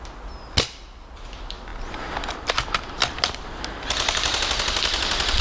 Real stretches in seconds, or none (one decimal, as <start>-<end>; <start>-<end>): 0.0-5.4